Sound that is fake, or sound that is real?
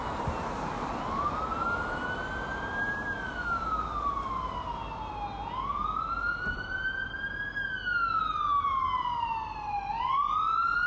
real